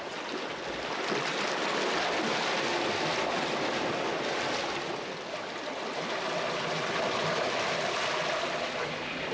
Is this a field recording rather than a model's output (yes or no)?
yes